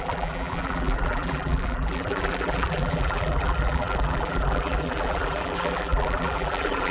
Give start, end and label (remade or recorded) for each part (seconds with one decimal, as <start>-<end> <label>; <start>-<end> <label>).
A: 0.0-6.9 remade